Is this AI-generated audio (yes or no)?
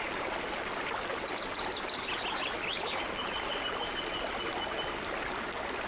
no